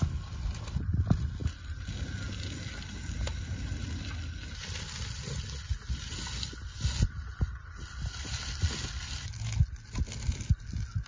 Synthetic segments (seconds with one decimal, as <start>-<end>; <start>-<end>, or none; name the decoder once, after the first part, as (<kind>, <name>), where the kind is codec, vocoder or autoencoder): none

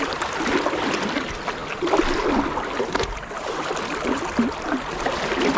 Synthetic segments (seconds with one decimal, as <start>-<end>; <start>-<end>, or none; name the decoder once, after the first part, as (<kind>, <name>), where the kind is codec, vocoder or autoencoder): none

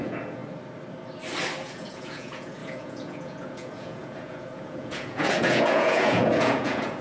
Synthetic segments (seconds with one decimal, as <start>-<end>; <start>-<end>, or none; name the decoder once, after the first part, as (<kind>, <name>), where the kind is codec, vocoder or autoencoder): 0.0-0.4 (vocoder, Vocos); 1.6-7.0

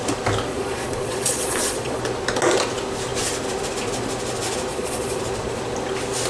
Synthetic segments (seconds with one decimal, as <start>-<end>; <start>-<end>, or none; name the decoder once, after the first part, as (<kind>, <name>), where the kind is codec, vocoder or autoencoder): 0.5-2.0 (vocoder, Vocos); 4.7-5.2

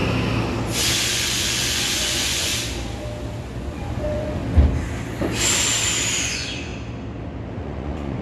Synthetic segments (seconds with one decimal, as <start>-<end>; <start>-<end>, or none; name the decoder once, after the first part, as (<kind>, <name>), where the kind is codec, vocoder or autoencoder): 1.1-2.5 (vocoder, Vocos); 3.4-4.4; 6.2-6.7; 7.6-8.2

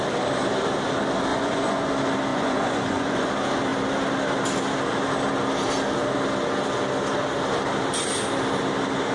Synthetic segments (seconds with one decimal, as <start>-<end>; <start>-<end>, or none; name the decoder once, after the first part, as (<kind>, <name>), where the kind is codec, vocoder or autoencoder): 1.3-1.9 (vocoder, Vocos); 2.3-3.3

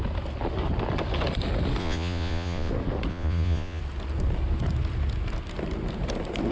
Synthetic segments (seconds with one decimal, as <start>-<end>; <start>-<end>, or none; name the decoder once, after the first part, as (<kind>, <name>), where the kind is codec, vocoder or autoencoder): 1.8-2.7 (vocoder, Vocos); 3.1-3.8

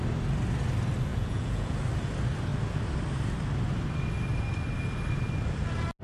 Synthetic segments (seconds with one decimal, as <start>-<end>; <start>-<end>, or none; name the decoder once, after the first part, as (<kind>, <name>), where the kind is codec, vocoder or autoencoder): 1.1-1.8 (vocoder, Vocos)